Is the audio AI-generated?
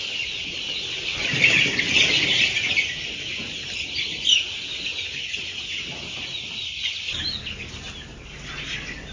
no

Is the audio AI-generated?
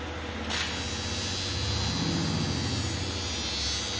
no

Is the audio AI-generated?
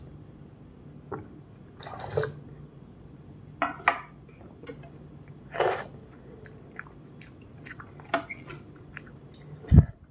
no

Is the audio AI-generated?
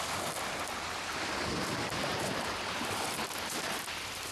no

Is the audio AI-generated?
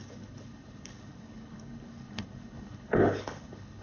yes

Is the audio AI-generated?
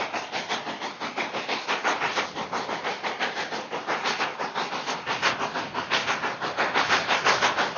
no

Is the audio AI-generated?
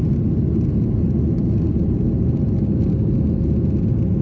no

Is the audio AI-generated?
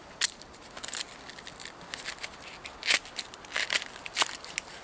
no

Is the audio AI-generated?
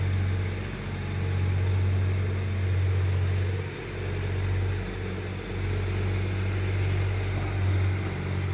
no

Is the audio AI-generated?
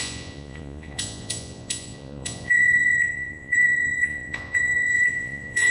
yes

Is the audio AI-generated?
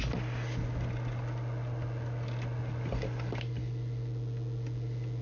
no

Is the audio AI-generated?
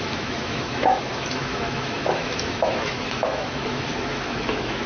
yes